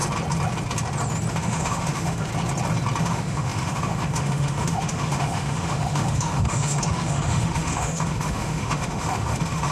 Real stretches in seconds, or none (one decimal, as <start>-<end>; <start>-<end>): 0.0-1.3; 2.3-3.0